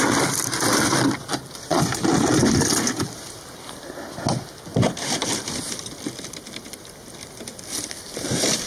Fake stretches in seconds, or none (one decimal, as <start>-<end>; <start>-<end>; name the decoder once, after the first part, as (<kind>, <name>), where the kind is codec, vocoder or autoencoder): 4.7-5.5 (vocoder, BigVGAN v2)